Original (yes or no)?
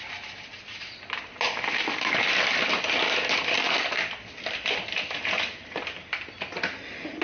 no